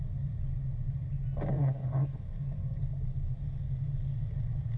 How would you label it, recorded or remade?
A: recorded